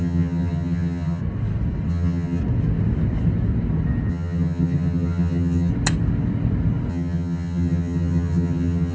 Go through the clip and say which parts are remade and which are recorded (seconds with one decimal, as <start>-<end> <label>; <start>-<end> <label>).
0.0-1.2 remade; 1.2-1.9 recorded; 1.9-2.4 remade; 2.4-4.1 recorded; 4.1-5.7 remade; 5.7-6.9 recorded; 6.9-8.9 remade